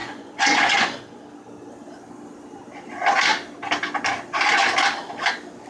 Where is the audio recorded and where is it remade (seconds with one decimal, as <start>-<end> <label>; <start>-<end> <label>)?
0.0-1.0 remade; 1.0-5.7 recorded